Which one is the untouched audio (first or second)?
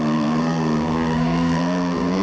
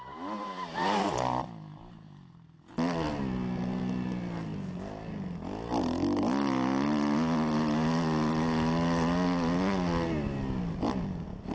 second